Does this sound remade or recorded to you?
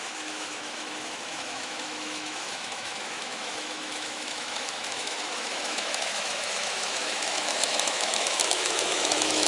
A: remade